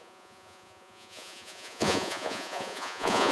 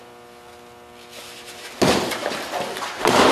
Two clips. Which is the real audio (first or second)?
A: second